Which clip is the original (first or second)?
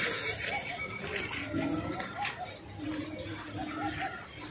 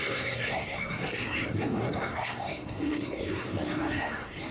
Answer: first